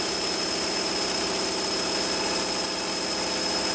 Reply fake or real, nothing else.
real